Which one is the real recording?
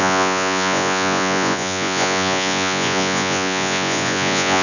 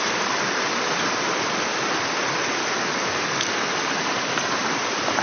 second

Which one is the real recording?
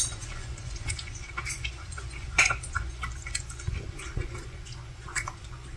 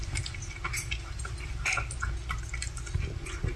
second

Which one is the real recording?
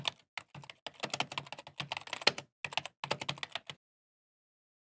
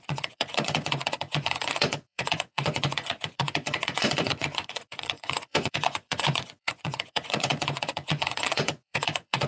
first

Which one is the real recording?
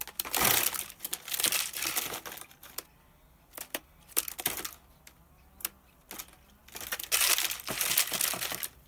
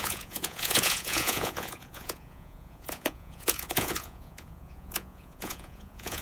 first